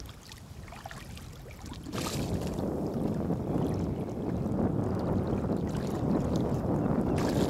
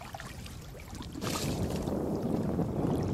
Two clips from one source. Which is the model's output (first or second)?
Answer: second